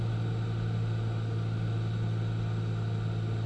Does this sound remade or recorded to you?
recorded